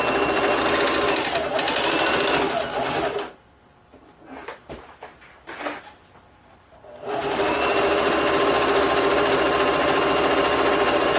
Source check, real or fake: real